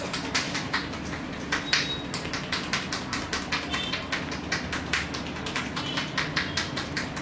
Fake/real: real